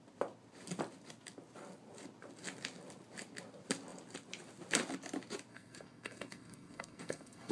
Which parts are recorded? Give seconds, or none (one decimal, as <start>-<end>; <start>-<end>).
0.0-5.5